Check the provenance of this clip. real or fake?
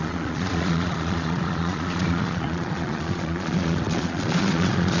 fake